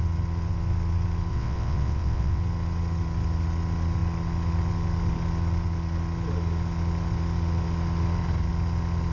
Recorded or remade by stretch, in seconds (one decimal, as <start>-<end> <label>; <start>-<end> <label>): 0.0-1.3 recorded; 1.3-2.4 remade; 2.4-9.1 recorded